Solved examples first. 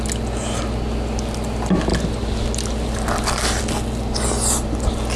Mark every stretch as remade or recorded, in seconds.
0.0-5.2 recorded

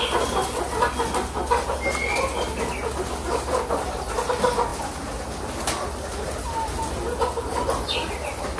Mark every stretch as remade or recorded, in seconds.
0.0-8.6 recorded

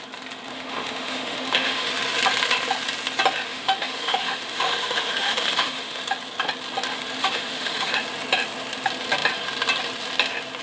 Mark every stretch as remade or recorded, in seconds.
0.0-0.5 recorded; 0.5-1.9 remade; 1.9-3.5 recorded; 3.5-6.0 remade; 6.0-7.2 recorded; 7.2-7.9 remade; 7.9-10.6 recorded

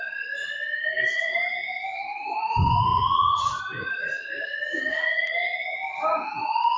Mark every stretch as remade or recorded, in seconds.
0.0-2.9 recorded; 2.9-3.6 remade; 3.6-6.8 recorded